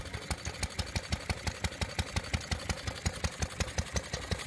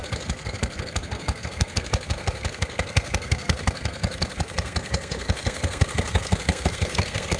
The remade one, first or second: second